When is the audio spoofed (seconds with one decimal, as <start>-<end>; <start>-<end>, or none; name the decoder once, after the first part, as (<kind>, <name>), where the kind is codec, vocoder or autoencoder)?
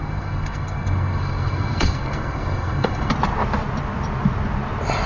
0.0-3.1 (codec, SNAC)